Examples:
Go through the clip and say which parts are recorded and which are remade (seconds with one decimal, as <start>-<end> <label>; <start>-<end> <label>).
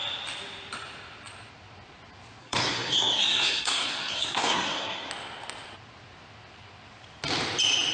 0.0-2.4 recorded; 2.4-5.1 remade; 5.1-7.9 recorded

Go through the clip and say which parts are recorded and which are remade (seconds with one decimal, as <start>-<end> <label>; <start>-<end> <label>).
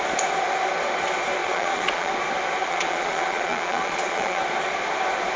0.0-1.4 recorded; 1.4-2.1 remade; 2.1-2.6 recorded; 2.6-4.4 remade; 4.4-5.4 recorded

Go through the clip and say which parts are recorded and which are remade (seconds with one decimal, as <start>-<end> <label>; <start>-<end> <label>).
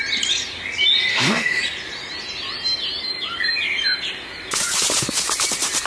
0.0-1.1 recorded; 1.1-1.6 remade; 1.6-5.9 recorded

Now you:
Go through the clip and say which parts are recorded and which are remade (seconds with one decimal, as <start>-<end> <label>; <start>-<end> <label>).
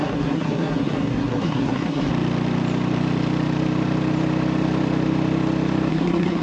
0.0-2.1 remade; 2.1-5.9 recorded; 5.9-6.4 remade